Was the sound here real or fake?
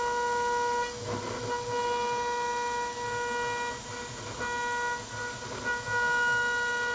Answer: real